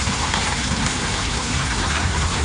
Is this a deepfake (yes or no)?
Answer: yes